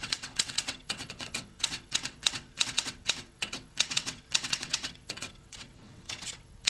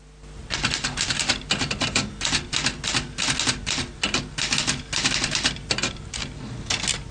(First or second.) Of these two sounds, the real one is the second